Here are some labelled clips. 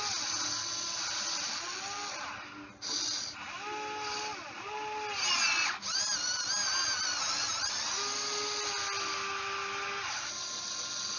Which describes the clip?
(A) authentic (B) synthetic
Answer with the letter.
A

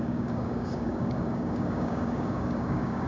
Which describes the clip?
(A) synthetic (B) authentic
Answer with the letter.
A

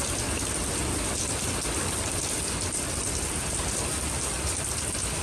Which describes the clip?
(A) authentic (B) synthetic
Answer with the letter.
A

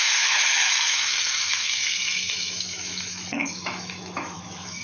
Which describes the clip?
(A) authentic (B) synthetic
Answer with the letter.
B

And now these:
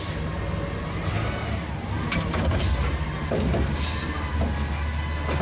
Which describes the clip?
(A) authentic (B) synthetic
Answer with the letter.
A